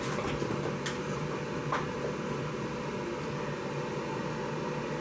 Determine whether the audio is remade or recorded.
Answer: recorded